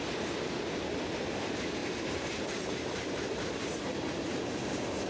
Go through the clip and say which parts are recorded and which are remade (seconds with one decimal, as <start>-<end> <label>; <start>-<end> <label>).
0.0-1.8 recorded; 1.8-3.6 remade; 3.6-5.1 recorded

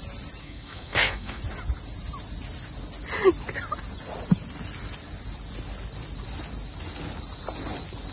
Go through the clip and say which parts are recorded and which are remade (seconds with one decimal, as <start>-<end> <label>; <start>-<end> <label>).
0.0-0.4 recorded; 0.4-1.4 remade; 1.4-8.1 recorded

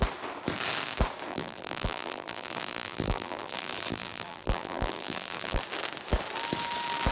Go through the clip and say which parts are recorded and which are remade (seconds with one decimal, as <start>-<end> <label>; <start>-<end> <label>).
0.0-1.3 recorded; 1.3-5.6 remade; 5.6-7.1 recorded

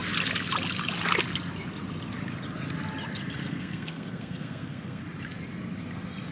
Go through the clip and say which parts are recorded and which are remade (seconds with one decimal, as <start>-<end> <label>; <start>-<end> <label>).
0.0-3.4 recorded; 3.4-5.0 remade; 5.0-6.3 recorded

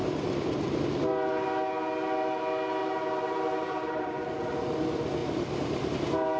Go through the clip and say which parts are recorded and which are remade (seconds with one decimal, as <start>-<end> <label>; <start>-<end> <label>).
0.0-0.8 remade; 0.8-2.8 recorded; 2.8-4.5 remade; 4.5-5.2 recorded; 5.2-5.9 remade; 5.9-6.4 recorded

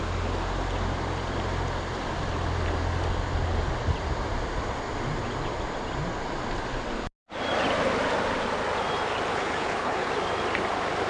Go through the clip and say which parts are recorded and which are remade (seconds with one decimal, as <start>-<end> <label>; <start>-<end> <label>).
0.0-9.3 recorded; 9.3-10.1 remade; 10.1-11.1 recorded

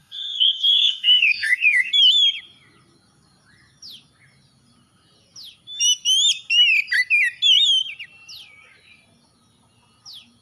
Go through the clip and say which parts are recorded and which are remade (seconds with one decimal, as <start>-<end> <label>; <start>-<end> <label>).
0.0-1.9 remade; 1.9-10.4 recorded